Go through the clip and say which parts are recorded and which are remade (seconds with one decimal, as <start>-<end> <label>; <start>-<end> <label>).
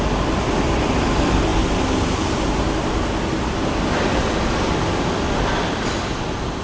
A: 0.0-6.6 recorded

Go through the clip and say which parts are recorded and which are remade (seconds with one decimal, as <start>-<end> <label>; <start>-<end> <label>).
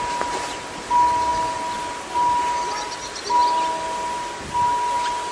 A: 0.0-5.3 recorded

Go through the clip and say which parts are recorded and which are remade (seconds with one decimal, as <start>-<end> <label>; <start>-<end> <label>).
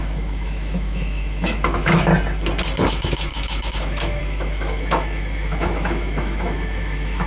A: 0.0-2.1 remade; 2.1-2.9 recorded; 2.9-7.3 remade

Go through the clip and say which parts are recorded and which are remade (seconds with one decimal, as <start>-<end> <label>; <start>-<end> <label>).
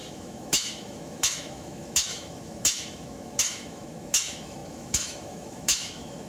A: 0.0-6.3 remade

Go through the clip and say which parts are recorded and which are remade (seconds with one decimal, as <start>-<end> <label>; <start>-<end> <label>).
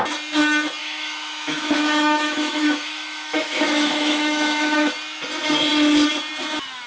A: 0.0-0.8 recorded; 0.8-4.9 remade; 4.9-6.9 recorded